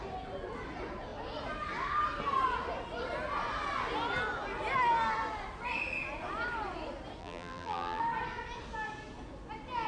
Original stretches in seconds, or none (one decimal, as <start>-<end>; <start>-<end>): 0.0-7.2; 8.0-9.9